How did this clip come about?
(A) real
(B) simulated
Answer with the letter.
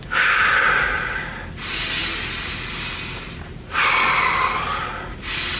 A